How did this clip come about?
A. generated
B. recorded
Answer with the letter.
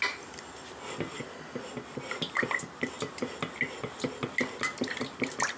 B